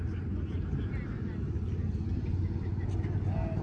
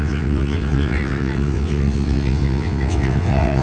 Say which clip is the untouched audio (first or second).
first